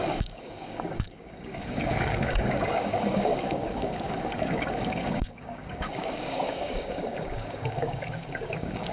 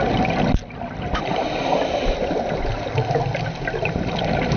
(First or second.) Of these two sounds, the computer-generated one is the first